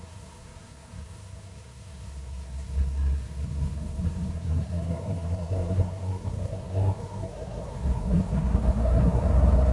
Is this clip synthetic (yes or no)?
yes